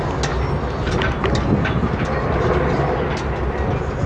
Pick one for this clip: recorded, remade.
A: recorded